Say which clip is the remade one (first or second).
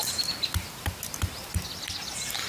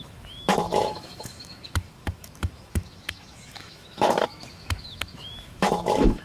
second